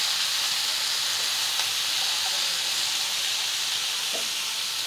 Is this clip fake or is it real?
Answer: real